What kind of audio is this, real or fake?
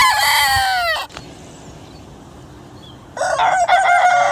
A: real